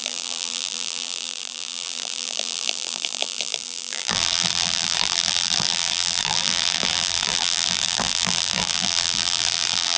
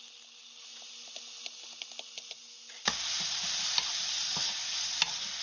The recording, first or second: second